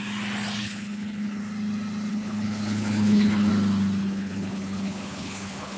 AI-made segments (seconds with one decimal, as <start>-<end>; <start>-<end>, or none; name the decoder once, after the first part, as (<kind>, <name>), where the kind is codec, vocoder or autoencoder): 0.6-1.4 (codec, HILCodec); 2.1-3.5; 4.0-5.8